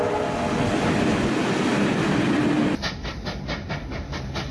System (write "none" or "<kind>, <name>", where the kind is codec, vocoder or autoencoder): none